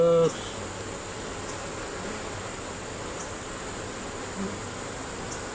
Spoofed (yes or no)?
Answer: no